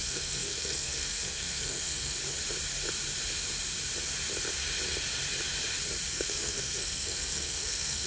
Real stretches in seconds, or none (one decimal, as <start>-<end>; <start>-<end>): 2.2-6.1